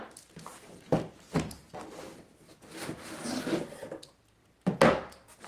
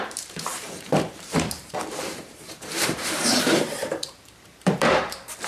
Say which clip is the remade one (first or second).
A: second